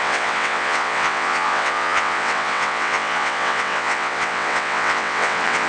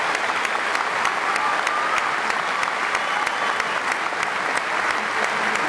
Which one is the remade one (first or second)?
first